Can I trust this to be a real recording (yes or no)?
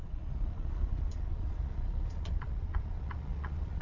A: no